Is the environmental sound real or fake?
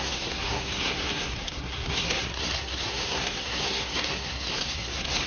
fake